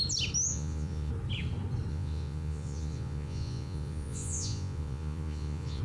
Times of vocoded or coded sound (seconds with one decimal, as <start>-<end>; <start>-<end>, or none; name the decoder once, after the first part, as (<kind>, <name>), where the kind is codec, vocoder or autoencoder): 0.5-1.1 (vocoder, Vocos); 1.9-5.8